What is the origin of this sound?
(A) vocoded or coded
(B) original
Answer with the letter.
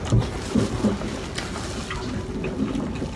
B